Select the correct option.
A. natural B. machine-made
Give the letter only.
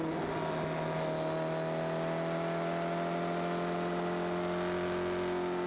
A